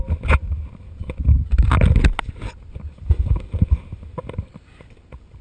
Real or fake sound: real